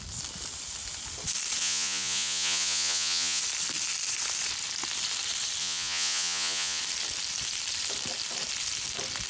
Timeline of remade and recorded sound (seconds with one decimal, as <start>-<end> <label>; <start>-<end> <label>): 0.0-1.6 recorded; 1.6-3.4 remade; 3.4-5.6 recorded; 5.6-6.8 remade; 6.8-9.3 recorded